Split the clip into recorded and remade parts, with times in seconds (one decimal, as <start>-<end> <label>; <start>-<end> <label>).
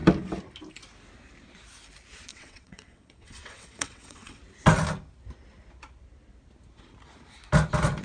0.0-2.3 recorded; 2.3-4.4 remade; 4.4-8.0 recorded